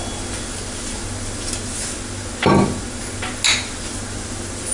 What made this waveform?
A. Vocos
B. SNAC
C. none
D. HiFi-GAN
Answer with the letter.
C